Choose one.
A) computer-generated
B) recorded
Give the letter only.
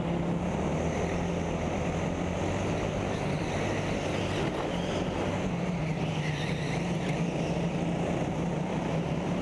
B